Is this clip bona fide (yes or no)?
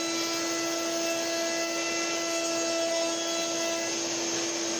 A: yes